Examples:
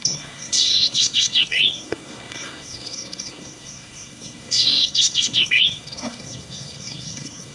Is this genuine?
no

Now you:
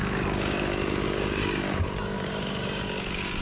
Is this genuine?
no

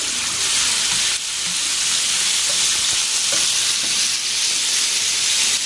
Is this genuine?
yes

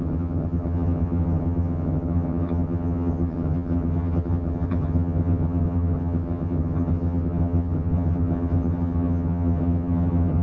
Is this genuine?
no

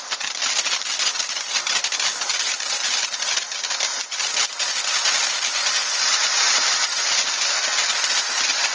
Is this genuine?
yes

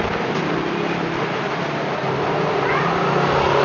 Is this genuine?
yes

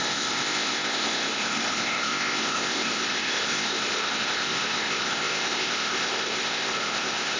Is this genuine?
no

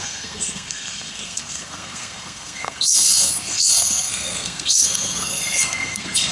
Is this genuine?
no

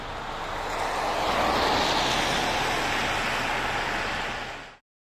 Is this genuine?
yes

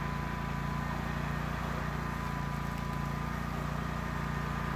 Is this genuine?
yes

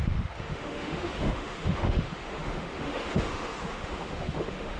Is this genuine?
no